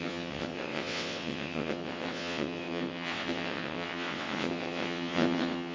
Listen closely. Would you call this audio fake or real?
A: fake